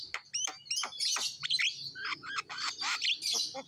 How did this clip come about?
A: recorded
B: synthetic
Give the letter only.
A